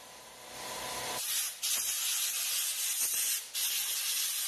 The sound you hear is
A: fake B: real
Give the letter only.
B